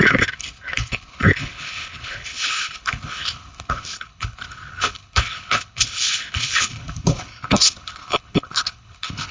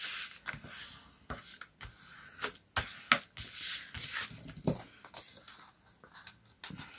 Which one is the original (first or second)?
second